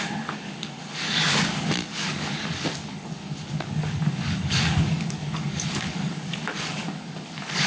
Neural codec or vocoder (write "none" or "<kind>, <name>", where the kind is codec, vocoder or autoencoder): codec, DAC